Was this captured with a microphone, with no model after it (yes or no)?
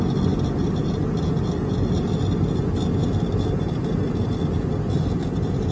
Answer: yes